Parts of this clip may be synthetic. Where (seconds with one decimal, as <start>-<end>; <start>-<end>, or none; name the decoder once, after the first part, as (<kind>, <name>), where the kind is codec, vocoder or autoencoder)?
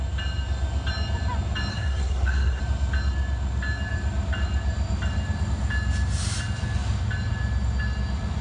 1.7-2.6 (codec, SNAC)